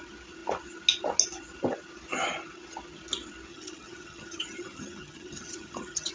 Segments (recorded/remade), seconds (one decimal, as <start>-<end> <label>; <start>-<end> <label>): 0.0-3.5 recorded; 3.5-6.1 remade